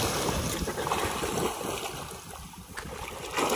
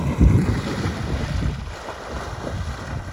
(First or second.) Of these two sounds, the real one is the first